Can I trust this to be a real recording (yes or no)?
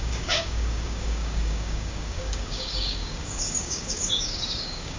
no